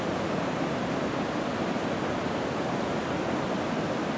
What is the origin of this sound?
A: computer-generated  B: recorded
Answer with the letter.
B